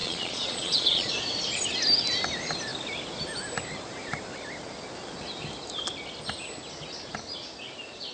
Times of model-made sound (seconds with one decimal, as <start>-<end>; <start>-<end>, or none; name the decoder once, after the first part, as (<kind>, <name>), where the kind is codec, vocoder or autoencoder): 0.0-1.1 (vocoder, Vocos)